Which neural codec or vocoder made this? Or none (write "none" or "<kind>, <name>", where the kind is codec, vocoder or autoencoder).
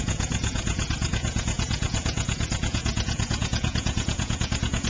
vocoder, Vocos